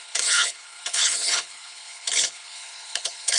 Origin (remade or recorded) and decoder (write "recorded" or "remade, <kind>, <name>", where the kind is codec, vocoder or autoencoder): remade, codec, HILCodec